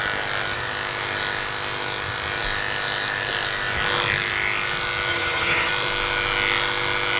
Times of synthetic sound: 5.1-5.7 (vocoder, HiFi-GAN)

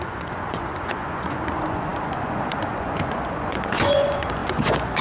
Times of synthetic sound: 0.0-5.0 (vocoder, Vocos)

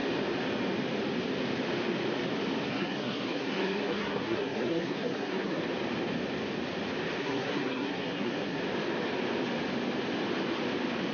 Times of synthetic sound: 2.7-5.6 (codec, SNAC); 7.2-8.6

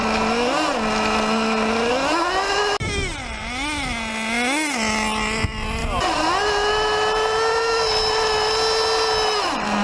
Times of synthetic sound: none

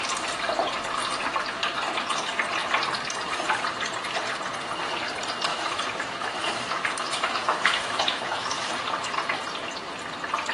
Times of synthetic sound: 5.5-8.7 (autoencoder, DAC-VAE)